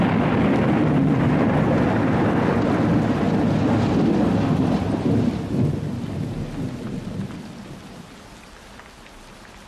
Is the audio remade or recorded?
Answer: recorded